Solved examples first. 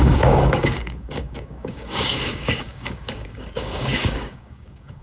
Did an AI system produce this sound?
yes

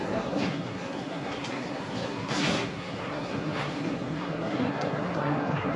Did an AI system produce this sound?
yes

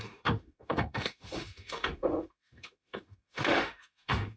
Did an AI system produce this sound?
yes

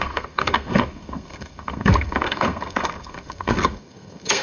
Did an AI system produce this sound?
yes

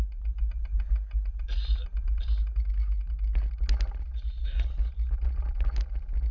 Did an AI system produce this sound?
no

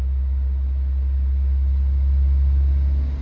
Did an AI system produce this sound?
no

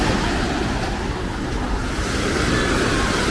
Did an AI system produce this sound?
no